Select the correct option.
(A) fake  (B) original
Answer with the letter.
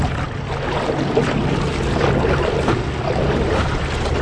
B